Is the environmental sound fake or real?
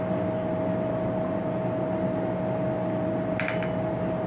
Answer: real